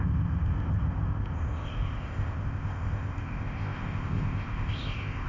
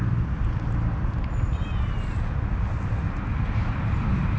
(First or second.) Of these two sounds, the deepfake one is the first